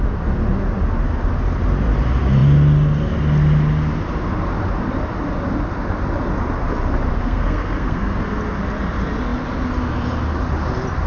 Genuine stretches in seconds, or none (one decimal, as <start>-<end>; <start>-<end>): 0.0-7.1; 8.2-11.1